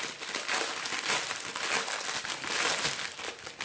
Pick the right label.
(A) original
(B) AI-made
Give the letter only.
A